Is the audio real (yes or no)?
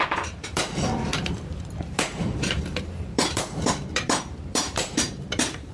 no